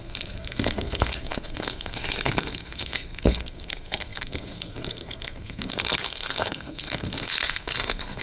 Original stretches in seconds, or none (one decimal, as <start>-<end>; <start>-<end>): none